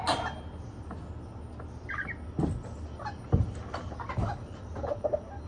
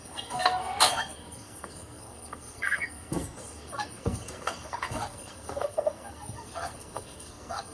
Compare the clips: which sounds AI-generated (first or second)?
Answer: second